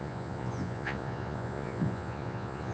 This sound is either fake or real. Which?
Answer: fake